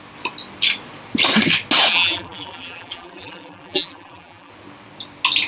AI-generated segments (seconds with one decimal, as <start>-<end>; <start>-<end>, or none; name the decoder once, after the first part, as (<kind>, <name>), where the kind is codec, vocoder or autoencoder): 1.9-4.5 (vocoder, BigVGAN v2)